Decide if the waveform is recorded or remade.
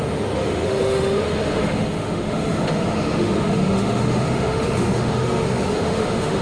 remade